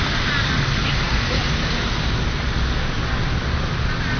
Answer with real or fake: real